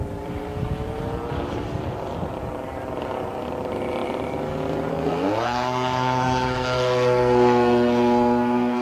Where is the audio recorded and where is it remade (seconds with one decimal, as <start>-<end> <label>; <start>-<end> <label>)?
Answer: 0.0-4.9 recorded; 4.9-8.8 remade